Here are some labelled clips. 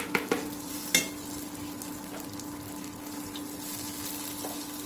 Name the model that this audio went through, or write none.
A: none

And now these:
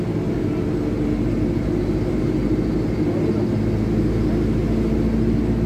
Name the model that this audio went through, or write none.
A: none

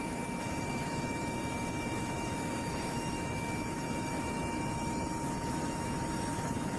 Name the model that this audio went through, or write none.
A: autoencoder, DAC-VAE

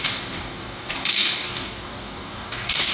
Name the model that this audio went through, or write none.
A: codec, DAC